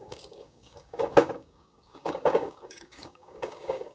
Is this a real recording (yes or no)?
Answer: no